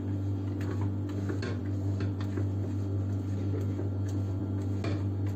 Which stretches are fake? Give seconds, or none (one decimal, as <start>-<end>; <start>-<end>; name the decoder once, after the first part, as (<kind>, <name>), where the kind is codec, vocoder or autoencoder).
none